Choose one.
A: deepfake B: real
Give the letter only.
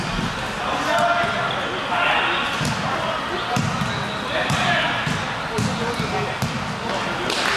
B